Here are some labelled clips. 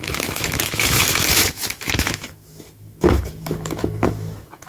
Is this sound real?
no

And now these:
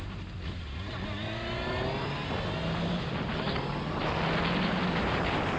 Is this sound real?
yes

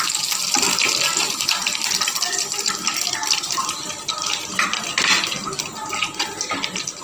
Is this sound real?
yes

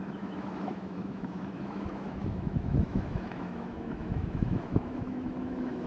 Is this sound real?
no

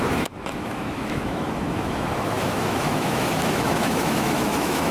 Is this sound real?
no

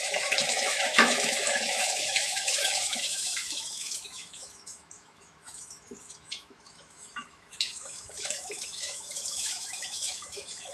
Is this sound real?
no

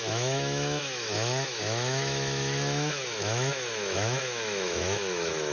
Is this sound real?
no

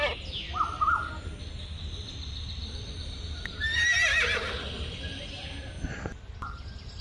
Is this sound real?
yes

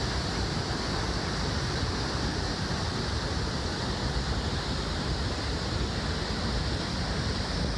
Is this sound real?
yes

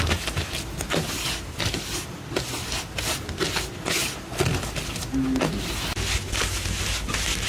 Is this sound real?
yes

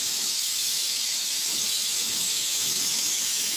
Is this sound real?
no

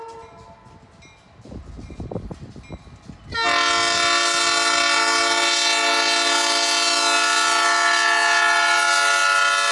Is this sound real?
yes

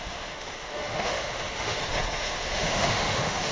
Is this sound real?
no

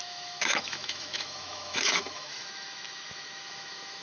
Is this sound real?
no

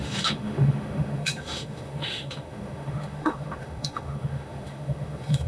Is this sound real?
no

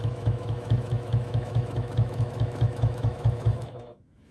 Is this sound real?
no